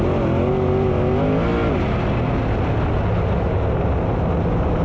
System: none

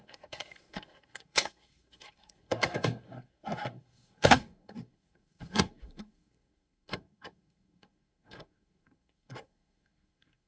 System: codec, SNAC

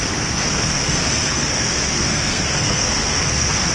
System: codec, SNAC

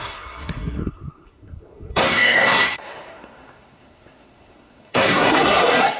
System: codec, SNAC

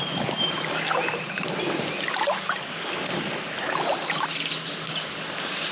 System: none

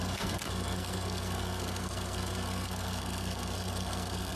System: codec, SNAC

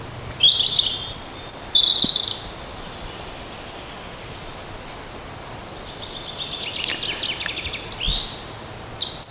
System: none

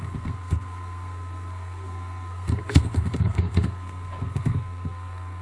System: codec, SNAC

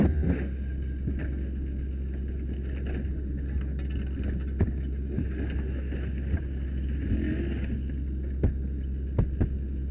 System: none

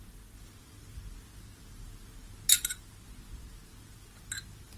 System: none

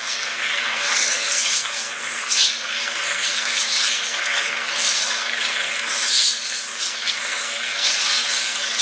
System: codec, SNAC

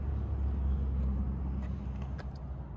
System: none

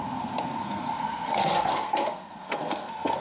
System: codec, SNAC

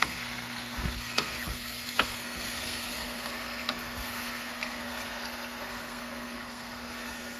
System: codec, SNAC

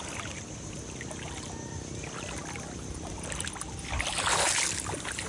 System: none